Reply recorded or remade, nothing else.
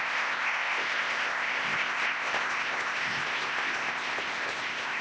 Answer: remade